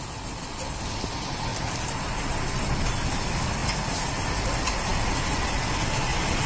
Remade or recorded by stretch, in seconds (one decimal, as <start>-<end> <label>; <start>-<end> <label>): 0.0-1.5 recorded; 1.5-2.3 remade; 2.3-6.5 recorded